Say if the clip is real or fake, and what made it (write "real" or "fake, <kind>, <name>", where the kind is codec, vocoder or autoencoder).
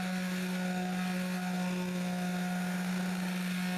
real